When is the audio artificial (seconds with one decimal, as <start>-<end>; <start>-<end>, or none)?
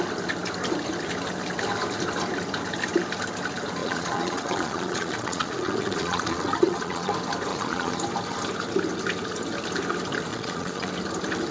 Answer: 3.8-7.1; 7.5-8.0; 10.3-10.9